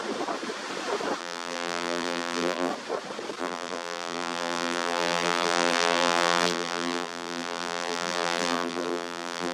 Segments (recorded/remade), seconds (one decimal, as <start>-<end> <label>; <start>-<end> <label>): 0.0-1.2 recorded; 1.2-2.7 remade; 2.7-3.4 recorded; 3.4-9.5 remade